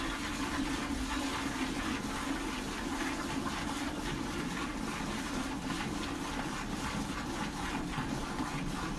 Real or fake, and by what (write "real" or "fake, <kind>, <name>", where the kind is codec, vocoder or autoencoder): real